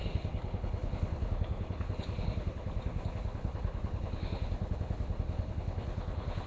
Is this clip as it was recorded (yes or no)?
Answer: no